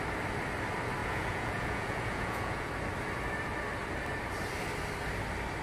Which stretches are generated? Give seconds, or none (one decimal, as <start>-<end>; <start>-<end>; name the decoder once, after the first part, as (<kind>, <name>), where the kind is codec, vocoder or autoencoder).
1.0-2.7 (vocoder, Vocos)